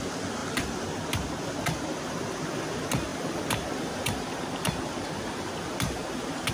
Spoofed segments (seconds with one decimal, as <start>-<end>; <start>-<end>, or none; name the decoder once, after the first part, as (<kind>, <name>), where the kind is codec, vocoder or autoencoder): none